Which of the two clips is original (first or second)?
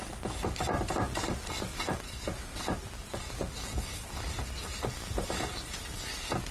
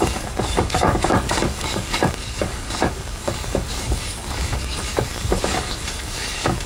first